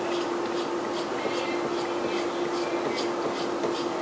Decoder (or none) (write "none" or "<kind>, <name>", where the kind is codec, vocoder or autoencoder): none